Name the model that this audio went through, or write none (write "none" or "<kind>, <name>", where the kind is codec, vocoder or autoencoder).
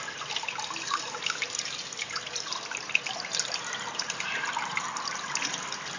none